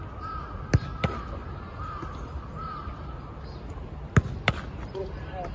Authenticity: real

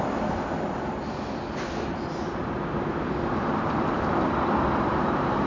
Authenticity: real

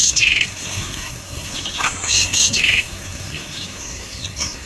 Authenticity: fake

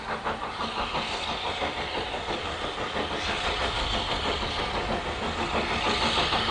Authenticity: real